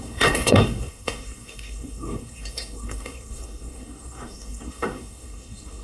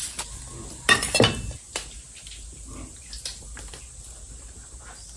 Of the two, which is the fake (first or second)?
first